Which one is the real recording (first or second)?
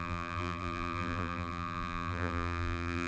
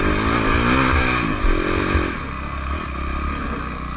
second